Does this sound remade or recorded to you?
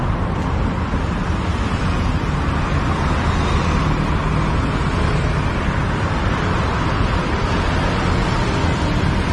recorded